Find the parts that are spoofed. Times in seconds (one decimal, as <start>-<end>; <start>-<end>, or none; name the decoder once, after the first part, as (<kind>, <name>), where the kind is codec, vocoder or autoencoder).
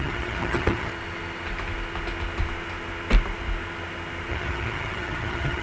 0.0-0.9 (vocoder, HiFi-GAN); 4.3-5.6